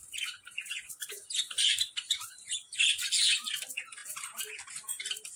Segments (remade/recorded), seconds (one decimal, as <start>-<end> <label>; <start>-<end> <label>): 0.0-5.4 recorded